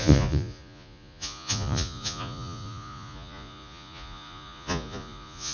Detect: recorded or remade remade